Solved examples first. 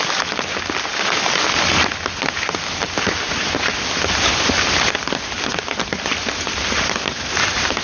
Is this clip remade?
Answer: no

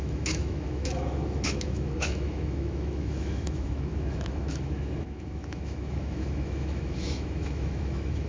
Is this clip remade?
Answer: yes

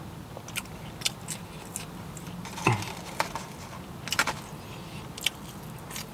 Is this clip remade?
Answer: no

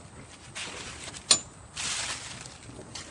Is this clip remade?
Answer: no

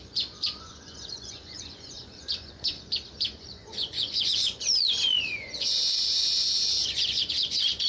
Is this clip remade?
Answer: yes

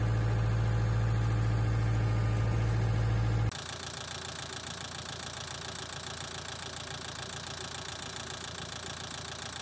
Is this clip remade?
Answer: no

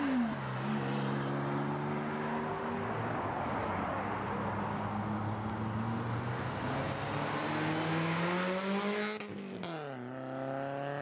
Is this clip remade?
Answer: no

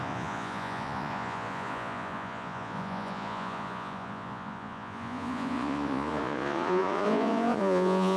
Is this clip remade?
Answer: yes